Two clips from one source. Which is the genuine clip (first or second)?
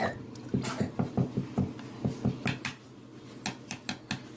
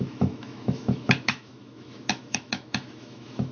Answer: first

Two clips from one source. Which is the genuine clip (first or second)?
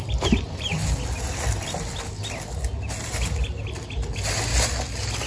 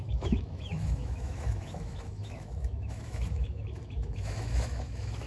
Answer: first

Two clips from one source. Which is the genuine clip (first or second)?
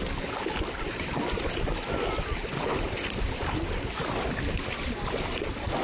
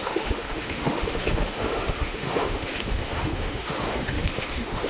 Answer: first